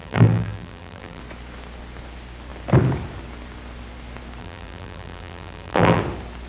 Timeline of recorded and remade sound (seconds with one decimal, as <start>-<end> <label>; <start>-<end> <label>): 0.0-1.2 remade; 1.2-4.4 recorded; 4.4-6.0 remade; 6.0-6.5 recorded